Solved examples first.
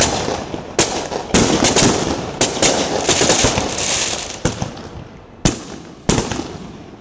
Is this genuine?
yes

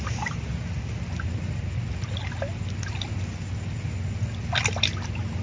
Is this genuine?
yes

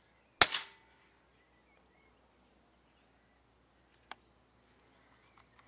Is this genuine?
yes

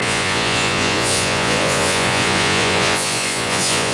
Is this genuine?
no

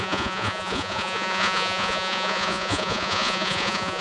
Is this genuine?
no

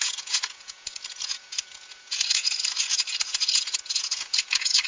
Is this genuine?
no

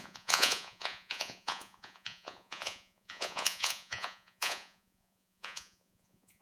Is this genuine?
no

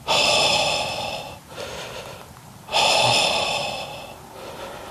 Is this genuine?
yes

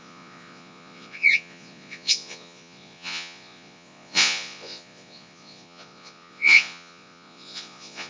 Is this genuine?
no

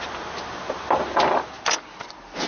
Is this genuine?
yes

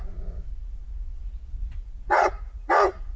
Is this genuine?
no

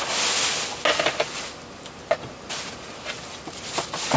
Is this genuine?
yes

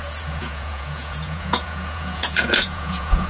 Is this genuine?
no